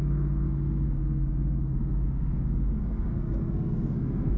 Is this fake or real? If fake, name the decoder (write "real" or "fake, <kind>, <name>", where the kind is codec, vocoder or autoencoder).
fake, codec, SNAC